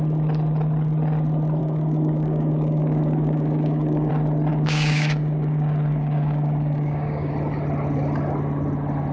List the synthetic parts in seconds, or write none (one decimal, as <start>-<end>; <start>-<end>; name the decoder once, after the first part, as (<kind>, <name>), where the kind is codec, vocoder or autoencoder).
1.6-4.1 (codec, DAC); 4.5-7.3